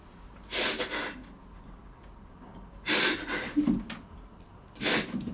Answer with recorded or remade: recorded